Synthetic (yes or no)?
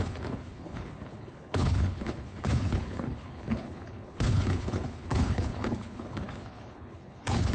yes